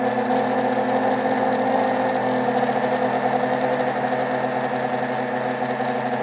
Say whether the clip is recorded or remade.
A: recorded